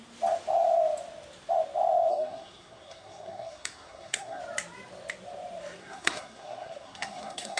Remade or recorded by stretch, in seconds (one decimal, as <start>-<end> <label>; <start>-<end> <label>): 0.0-2.1 recorded; 2.1-4.4 remade; 4.4-5.8 recorded; 5.8-7.6 remade